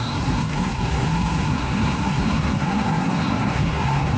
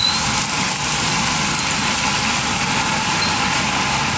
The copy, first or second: first